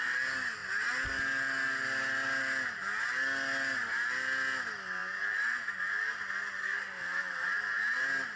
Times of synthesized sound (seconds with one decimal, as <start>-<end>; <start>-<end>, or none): 6.6-7.2